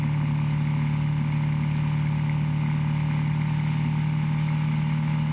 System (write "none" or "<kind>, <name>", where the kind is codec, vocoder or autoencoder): none